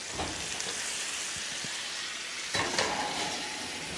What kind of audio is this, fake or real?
real